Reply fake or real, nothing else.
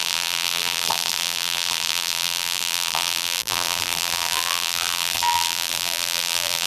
fake